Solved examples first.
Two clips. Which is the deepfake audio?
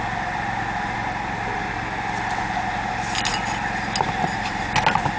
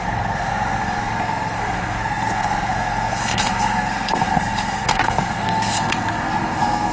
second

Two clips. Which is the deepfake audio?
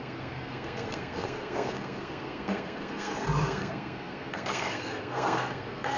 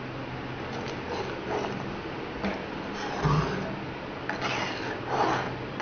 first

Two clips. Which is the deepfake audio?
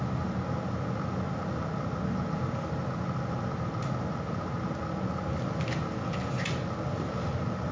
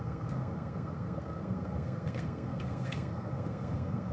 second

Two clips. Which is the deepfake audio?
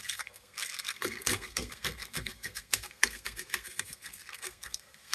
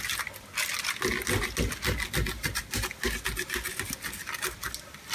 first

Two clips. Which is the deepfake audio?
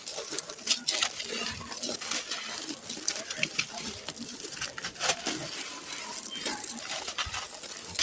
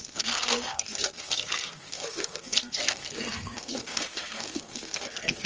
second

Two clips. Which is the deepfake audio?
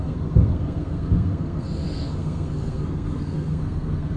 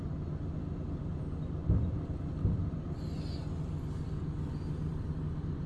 first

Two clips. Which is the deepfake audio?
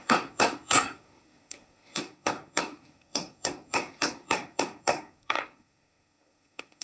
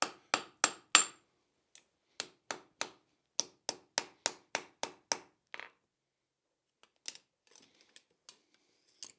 first